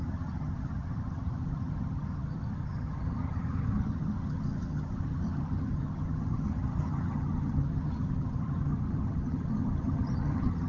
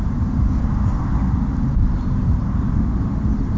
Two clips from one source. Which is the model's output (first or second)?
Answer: first